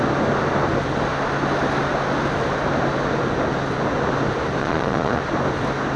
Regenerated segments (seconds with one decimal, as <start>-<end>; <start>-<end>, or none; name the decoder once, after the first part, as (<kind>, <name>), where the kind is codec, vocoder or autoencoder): 4.6-5.2 (vocoder, Vocos)